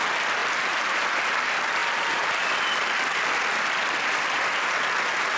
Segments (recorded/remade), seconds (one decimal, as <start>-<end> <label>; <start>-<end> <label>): 0.0-0.4 recorded; 0.4-1.1 remade; 1.1-1.8 recorded; 1.8-5.0 remade; 5.0-5.4 recorded